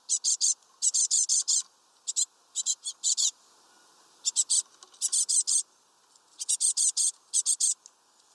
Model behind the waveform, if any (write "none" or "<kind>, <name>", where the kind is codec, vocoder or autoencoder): none